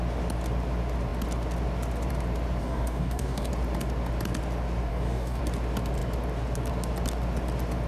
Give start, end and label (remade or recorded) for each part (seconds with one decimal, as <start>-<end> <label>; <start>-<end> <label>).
0.0-2.6 recorded; 2.6-3.5 remade; 3.5-4.9 recorded; 4.9-5.4 remade; 5.4-7.9 recorded

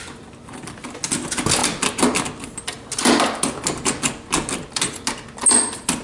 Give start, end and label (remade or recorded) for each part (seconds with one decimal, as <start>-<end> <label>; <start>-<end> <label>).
0.0-6.0 recorded

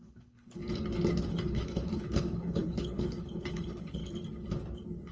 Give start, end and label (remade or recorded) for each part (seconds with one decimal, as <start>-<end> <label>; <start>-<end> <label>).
0.0-0.6 remade; 0.6-1.3 recorded; 1.3-4.0 remade; 4.0-5.1 recorded

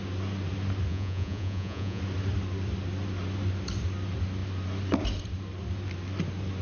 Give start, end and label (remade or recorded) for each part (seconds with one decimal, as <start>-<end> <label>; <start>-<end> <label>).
0.0-0.9 recorded; 0.9-2.0 remade; 2.0-6.6 recorded

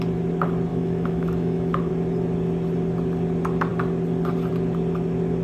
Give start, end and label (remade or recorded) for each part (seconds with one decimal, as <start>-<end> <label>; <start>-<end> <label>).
0.0-0.7 recorded; 0.7-1.9 remade; 1.9-5.4 recorded

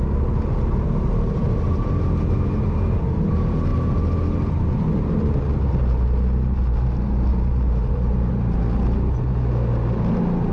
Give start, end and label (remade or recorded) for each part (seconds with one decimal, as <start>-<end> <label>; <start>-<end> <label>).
0.0-7.3 recorded; 7.3-8.3 remade; 8.3-10.5 recorded

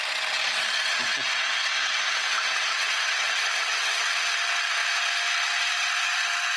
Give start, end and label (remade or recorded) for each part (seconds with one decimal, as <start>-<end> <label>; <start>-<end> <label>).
0.0-0.9 recorded; 0.9-4.2 remade; 4.2-6.6 recorded